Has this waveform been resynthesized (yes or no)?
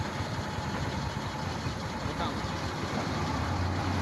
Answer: no